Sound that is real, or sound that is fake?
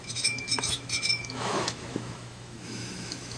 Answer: fake